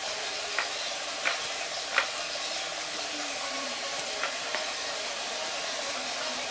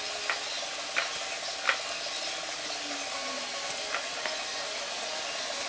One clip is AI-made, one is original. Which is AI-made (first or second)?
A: first